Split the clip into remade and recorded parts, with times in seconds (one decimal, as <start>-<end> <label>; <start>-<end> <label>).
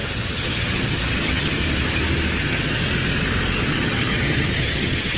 0.0-1.6 remade; 1.6-2.4 recorded; 2.4-2.8 remade; 2.8-3.6 recorded; 3.6-5.2 remade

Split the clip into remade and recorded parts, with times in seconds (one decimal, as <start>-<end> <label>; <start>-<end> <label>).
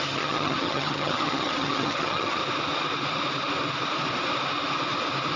0.0-2.4 remade; 2.4-5.4 recorded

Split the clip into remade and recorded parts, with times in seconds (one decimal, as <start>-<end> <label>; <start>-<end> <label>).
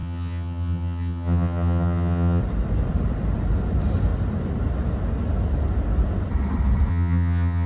0.0-2.4 remade; 2.4-6.9 recorded; 6.9-7.7 remade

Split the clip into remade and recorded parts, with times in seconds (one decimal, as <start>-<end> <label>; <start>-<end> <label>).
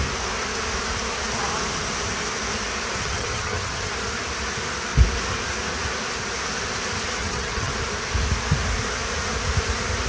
0.0-3.0 recorded; 3.0-3.9 remade; 3.9-7.2 recorded; 7.2-7.7 remade; 7.7-10.1 recorded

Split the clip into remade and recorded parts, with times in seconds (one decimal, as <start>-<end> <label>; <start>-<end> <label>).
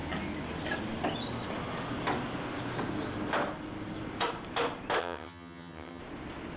0.0-5.0 recorded; 5.0-6.0 remade; 6.0-6.6 recorded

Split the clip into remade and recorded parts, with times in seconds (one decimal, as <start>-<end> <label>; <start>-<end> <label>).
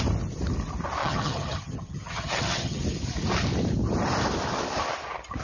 0.0-1.0 recorded; 1.0-2.8 remade; 2.8-5.4 recorded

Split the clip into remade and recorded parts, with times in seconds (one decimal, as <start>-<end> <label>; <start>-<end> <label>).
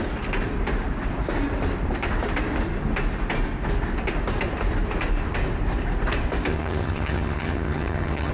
0.0-6.5 recorded; 6.5-8.3 remade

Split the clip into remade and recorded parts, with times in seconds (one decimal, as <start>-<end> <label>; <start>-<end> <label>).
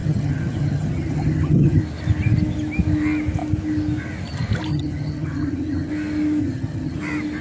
0.0-1.8 remade; 1.8-4.7 recorded; 4.7-5.9 remade; 5.9-6.4 recorded; 6.4-7.0 remade; 7.0-7.4 recorded